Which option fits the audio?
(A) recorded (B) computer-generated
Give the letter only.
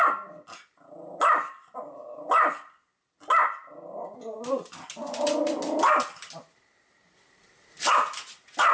A